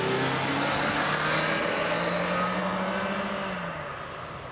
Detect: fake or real real